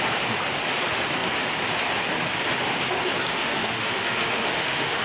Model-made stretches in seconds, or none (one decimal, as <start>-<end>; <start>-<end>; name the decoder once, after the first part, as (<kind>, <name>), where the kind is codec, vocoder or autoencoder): 3.3-5.0 (autoencoder, DAC-VAE)